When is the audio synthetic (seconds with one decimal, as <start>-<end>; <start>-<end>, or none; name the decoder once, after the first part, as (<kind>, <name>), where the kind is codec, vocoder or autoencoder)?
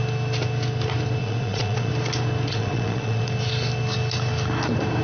1.2-1.9 (vocoder, Vocos); 2.5-3.2